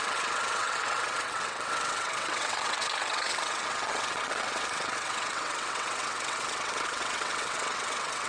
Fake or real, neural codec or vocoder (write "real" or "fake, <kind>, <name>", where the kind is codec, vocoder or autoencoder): fake, vocoder, WaveNeXt